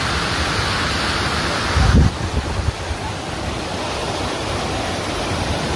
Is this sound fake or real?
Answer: real